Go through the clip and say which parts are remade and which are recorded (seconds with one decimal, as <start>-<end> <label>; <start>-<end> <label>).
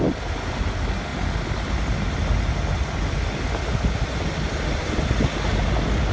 0.0-6.1 recorded